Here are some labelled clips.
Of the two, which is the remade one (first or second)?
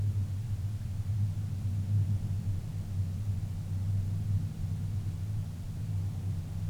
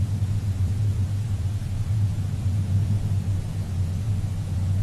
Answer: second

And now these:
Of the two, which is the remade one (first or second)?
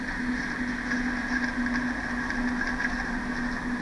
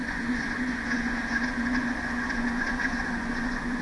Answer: second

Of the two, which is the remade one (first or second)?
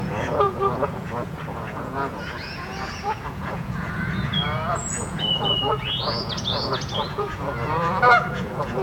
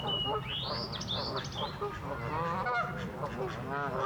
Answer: first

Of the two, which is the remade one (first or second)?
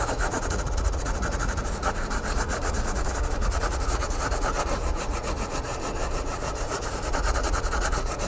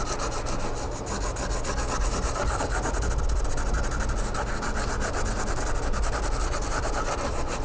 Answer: first